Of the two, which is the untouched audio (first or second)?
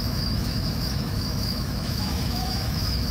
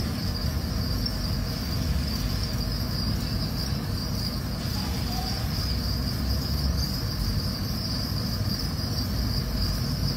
second